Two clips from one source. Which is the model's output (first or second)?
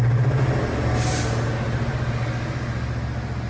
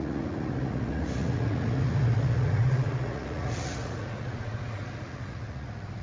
second